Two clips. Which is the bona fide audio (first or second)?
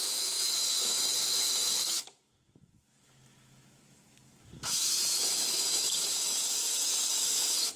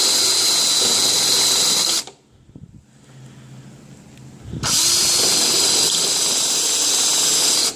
second